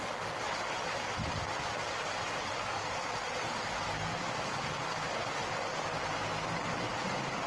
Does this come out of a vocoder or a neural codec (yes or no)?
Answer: no